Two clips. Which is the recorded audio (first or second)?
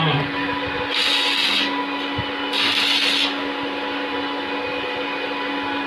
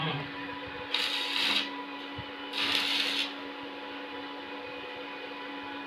first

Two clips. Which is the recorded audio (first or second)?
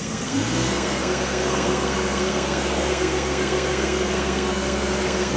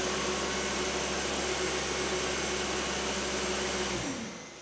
second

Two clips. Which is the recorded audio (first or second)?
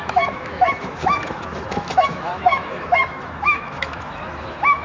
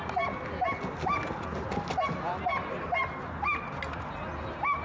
second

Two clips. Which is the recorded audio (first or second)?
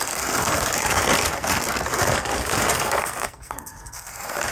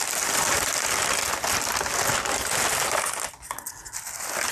second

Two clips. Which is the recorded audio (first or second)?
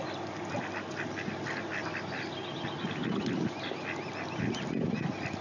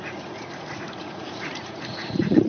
first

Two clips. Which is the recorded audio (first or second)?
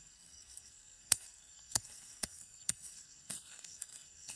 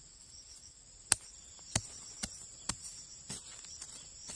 second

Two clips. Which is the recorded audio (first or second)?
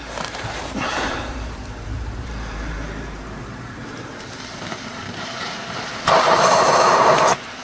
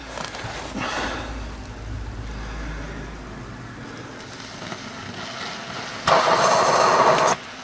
second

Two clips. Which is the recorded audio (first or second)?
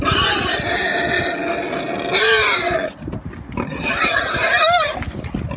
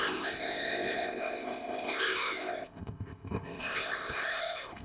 first